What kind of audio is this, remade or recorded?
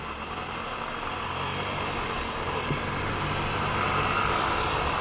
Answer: recorded